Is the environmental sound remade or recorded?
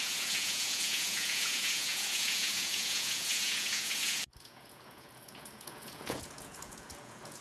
remade